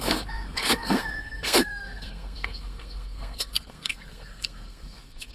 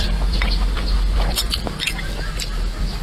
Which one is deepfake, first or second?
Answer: first